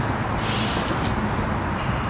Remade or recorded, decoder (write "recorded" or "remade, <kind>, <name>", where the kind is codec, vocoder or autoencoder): recorded